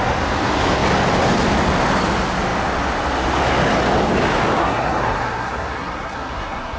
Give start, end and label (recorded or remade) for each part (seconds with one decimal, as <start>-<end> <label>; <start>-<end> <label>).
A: 0.0-4.6 recorded; 4.6-6.8 remade